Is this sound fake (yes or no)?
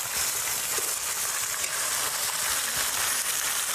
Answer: no